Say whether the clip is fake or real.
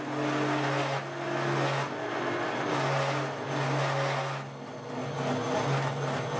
real